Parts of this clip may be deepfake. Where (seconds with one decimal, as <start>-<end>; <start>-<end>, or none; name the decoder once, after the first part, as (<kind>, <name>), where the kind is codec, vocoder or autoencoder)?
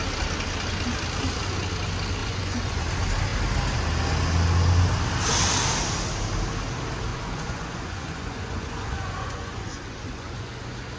2.2-2.8 (vocoder, Vocos); 7.1-11.0